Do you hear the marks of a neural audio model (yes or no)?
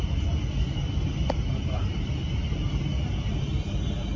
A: no